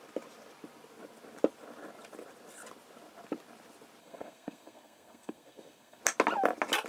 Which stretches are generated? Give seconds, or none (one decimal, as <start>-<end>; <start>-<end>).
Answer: 4.0-6.0